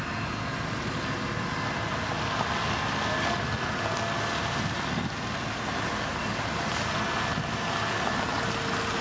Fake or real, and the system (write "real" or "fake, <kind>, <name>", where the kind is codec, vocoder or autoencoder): real